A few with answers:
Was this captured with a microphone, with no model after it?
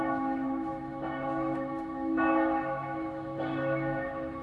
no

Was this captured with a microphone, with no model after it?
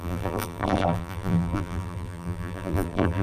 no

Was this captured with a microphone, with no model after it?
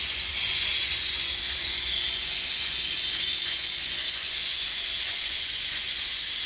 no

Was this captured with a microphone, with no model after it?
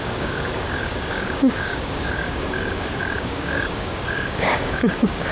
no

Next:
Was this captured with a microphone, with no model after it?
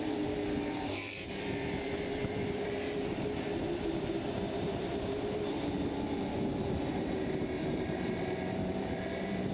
no